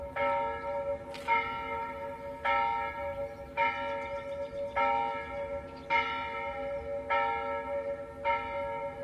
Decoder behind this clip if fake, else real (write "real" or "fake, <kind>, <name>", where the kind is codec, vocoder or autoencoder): real